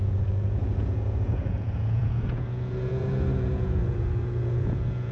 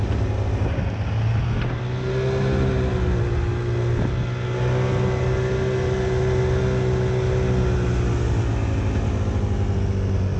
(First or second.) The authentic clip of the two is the second